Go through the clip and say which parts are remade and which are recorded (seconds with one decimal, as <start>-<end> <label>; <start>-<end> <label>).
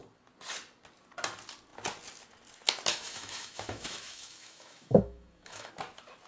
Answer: 0.0-2.9 recorded; 2.9-5.7 remade; 5.7-6.3 recorded